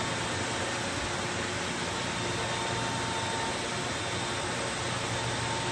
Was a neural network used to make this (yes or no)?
no